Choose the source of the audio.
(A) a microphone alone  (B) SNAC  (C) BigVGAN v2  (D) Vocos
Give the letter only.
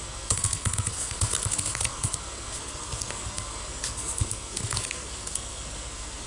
B